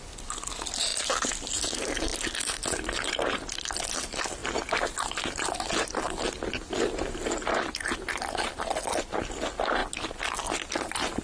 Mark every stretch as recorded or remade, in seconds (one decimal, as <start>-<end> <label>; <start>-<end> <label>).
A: 0.0-11.2 recorded